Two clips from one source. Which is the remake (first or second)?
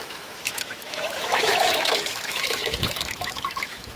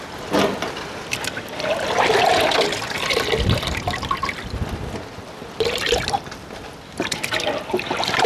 first